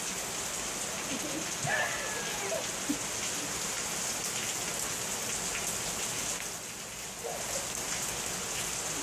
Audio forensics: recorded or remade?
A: recorded